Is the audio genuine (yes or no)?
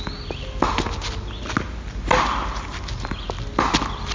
yes